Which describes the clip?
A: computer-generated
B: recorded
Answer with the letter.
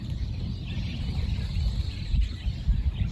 B